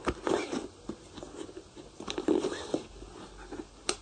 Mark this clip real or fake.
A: real